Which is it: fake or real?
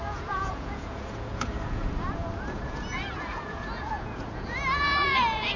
fake